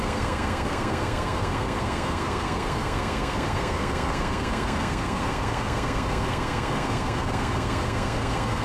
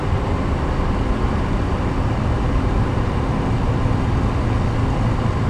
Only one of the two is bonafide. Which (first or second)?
second